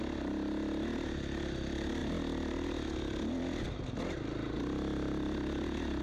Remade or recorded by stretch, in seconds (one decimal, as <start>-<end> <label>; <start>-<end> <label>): 0.0-6.0 recorded